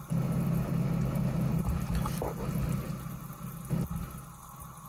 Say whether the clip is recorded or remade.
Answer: recorded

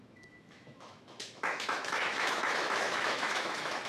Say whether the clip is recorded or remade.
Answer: remade